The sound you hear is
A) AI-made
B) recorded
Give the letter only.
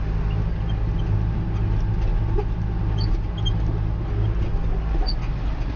B